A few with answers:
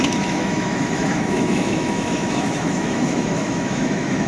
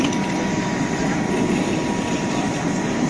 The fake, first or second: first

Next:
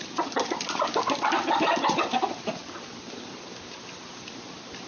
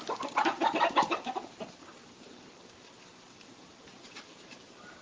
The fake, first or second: second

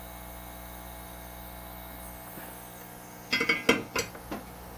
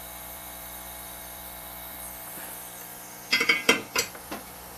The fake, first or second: second